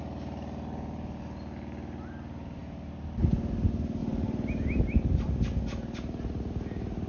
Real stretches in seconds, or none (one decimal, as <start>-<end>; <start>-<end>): 0.0-7.1